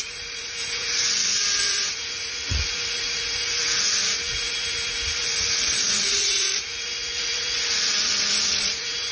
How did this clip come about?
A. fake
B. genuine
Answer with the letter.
A